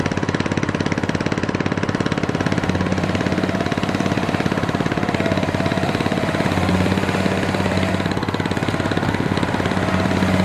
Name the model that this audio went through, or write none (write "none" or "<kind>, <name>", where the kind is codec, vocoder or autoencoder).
none